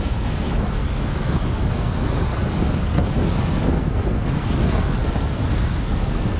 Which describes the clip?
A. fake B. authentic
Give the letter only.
A